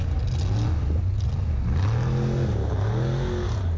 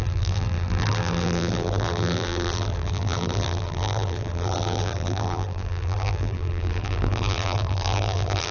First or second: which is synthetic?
second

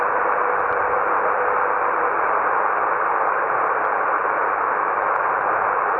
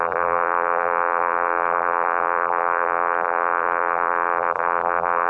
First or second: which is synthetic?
second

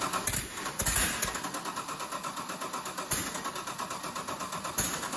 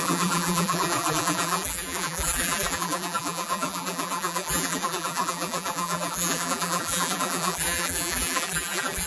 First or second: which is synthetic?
second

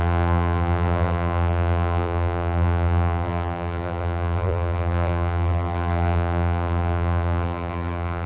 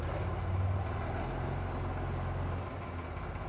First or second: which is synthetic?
first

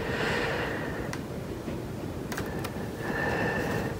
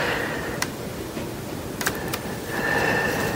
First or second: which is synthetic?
first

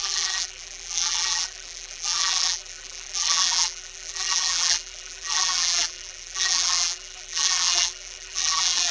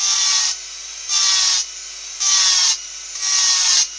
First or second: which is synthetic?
first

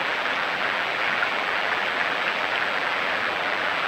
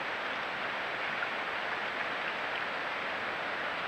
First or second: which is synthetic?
first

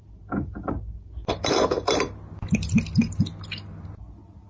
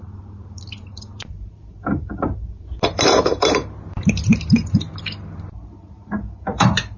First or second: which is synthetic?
second